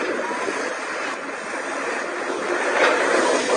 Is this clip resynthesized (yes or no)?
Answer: no